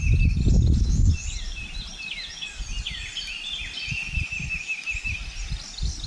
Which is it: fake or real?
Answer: real